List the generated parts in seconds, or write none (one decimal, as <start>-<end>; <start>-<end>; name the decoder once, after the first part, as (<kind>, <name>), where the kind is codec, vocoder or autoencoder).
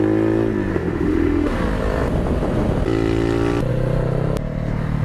0.7-1.6 (autoencoder, DAC-VAE)